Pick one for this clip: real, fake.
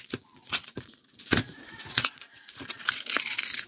fake